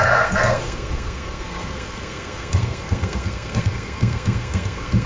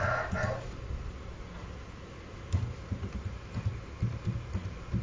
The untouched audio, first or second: second